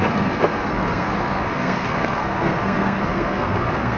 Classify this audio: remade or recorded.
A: remade